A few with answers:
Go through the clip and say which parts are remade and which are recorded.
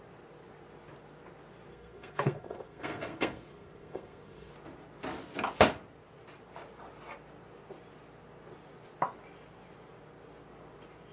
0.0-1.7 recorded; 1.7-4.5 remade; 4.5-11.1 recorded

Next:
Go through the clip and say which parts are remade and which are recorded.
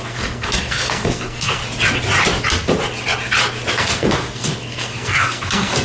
0.0-1.6 remade; 1.6-3.7 recorded; 3.7-5.8 remade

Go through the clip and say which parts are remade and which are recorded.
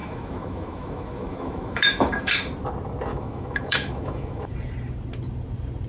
0.0-2.3 remade; 2.3-3.1 recorded; 3.1-4.5 remade; 4.5-5.9 recorded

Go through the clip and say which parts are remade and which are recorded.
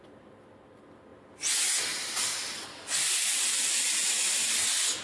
0.0-3.5 recorded; 3.5-4.1 remade; 4.1-5.0 recorded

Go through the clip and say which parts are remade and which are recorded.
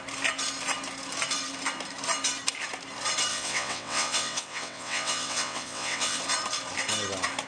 0.0-3.3 recorded; 3.3-6.2 remade; 6.2-7.5 recorded